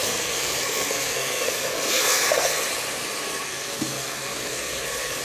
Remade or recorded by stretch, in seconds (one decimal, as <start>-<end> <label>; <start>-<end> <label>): 0.0-2.6 remade; 2.6-3.3 recorded; 3.3-5.2 remade